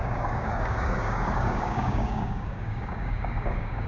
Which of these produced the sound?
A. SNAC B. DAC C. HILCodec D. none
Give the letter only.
B